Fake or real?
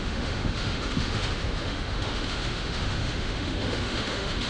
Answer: fake